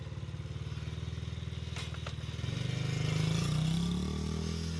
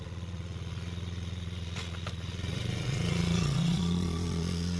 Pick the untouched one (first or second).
first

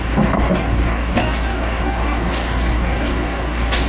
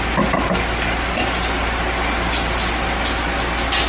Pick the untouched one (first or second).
second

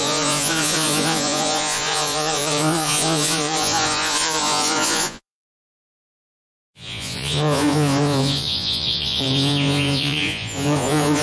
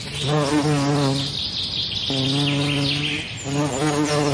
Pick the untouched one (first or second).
second